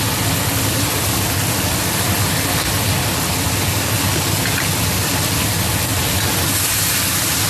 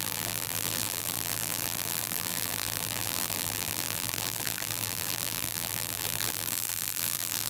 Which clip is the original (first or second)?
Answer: first